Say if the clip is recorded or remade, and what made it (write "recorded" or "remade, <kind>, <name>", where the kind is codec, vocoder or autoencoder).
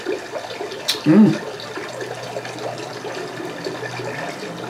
recorded